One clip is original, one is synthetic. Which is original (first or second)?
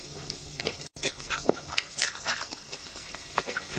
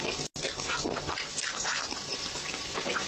second